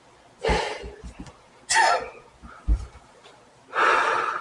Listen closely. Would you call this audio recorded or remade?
recorded